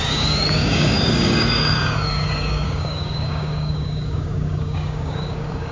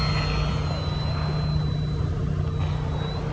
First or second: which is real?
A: second